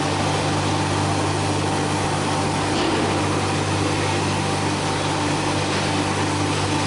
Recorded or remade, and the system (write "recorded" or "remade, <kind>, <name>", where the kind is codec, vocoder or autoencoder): recorded